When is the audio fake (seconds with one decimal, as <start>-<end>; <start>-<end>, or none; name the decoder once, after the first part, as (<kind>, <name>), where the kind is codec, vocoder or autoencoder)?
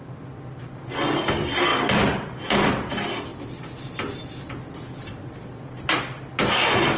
none